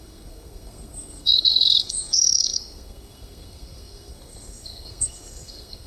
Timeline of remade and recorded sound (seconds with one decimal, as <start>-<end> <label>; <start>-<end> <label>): 0.0-5.9 remade